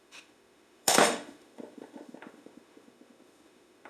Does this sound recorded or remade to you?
remade